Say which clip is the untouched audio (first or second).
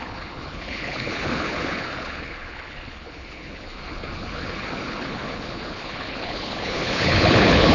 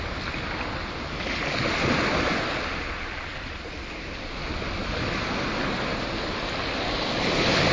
second